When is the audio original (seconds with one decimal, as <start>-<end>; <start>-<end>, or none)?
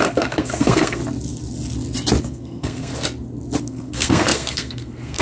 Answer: 1.0-2.2; 2.9-3.6